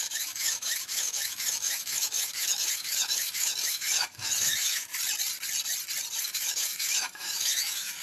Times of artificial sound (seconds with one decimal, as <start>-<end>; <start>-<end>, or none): 0.0-4.9; 6.2-8.0